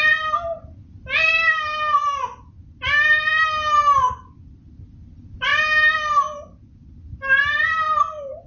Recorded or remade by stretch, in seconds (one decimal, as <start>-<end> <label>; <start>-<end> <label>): 0.0-8.5 recorded